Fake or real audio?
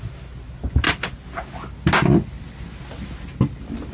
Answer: real